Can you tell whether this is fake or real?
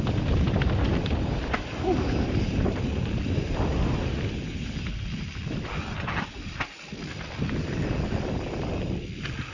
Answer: real